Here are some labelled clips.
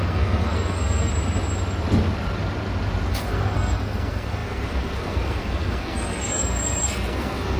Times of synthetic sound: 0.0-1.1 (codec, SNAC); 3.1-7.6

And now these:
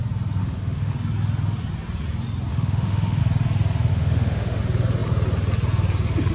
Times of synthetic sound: 0.4-0.9 (autoencoder, DAC-VAE); 2.5-3.2; 3.9-4.6

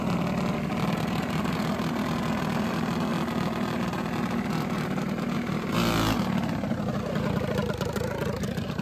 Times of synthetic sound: none

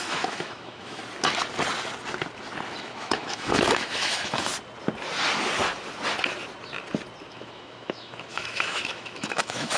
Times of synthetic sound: 0.0-1.0 (autoencoder, DAC-VAE); 2.8-4.5; 7.3-9.8